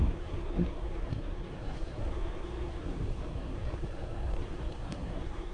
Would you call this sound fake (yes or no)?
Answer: yes